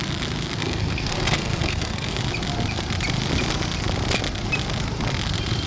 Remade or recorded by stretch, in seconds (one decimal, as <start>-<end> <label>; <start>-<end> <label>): 0.0-0.6 recorded; 0.6-2.2 remade; 2.2-5.7 recorded